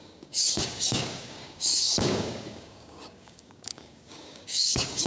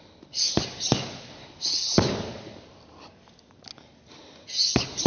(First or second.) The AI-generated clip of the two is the first